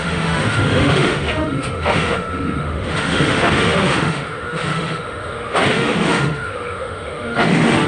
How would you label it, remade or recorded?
remade